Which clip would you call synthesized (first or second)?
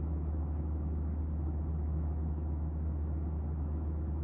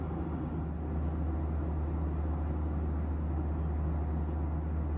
first